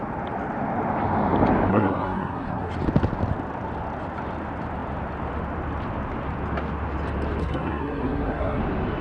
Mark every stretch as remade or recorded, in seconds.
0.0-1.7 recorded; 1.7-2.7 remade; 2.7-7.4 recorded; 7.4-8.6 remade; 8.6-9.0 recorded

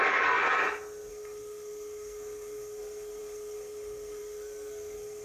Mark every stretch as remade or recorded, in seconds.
0.0-0.4 remade; 0.4-1.1 recorded; 1.1-5.2 remade

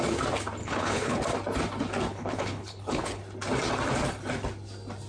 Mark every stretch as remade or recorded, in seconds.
0.0-0.6 recorded; 0.6-1.2 remade; 1.2-2.1 recorded; 2.1-3.2 remade; 3.2-5.1 recorded

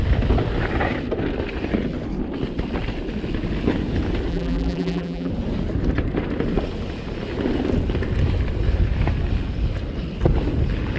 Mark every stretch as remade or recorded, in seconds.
0.0-4.3 recorded; 4.3-5.3 remade; 5.3-11.0 recorded

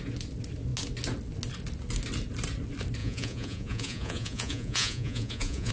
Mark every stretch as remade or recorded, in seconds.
0.0-3.0 recorded; 3.0-5.7 remade

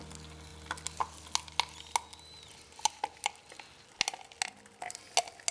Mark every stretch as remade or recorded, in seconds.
0.0-5.5 recorded